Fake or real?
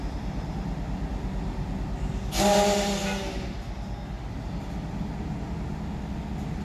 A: real